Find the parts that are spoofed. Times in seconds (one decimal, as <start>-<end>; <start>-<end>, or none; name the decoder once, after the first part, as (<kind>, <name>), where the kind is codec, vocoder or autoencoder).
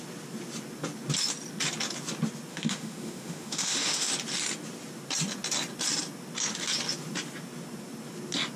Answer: 2.5-4.1 (autoencoder, DAC-VAE)